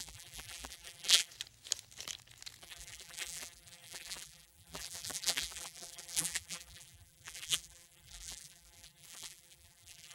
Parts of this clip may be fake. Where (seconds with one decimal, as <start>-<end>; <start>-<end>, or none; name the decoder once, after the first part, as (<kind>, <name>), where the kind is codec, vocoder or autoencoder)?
0.0-1.3 (vocoder, BigVGAN v2); 2.6-10.1